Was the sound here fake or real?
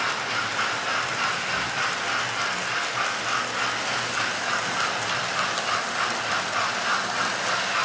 real